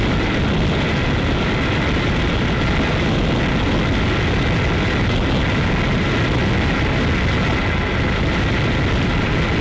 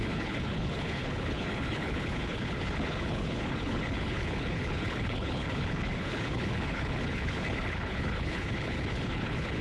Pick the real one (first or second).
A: first